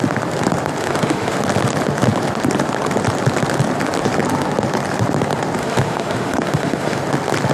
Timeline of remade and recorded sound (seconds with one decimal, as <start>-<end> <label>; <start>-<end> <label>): 0.0-0.8 recorded; 0.8-1.4 remade; 1.4-5.6 recorded; 5.6-7.0 remade; 7.0-7.5 recorded